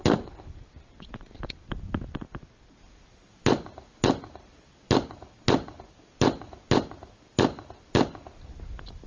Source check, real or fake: real